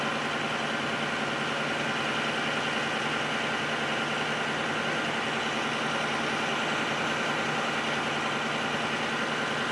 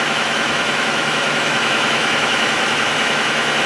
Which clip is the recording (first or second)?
first